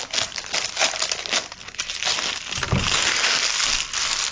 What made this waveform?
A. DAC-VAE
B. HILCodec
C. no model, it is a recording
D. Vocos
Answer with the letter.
C